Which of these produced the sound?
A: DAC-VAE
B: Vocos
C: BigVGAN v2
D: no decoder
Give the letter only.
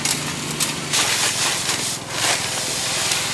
D